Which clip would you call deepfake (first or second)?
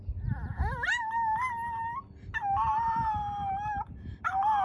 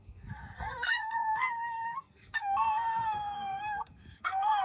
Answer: second